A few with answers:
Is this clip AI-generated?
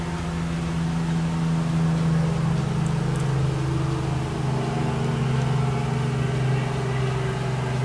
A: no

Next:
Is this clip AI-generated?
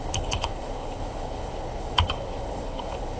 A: yes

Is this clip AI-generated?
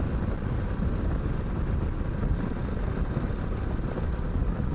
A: no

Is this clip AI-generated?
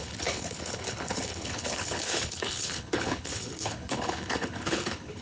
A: yes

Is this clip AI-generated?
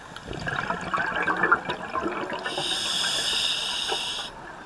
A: no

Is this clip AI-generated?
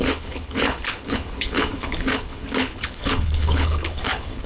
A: yes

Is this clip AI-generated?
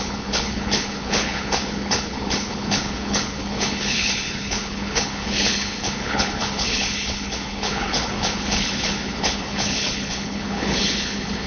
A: yes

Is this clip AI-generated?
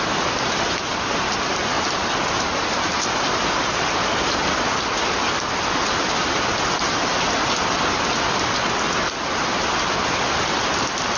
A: no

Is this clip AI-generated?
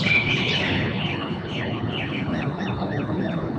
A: yes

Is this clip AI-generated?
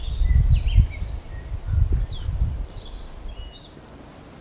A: no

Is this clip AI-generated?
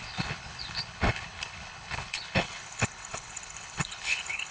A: yes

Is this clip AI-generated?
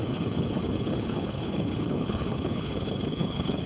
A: yes